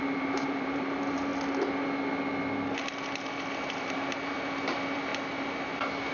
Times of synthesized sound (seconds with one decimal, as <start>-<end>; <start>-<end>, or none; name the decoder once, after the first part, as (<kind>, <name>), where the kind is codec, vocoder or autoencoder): 0.0-1.3 (vocoder, BigVGAN v2); 3.7-5.1